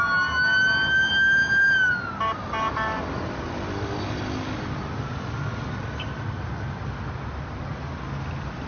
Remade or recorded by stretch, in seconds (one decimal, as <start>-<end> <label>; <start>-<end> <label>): 0.0-8.7 recorded